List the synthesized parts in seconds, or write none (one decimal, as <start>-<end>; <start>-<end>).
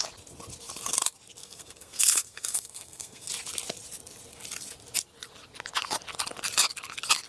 1.4-3.3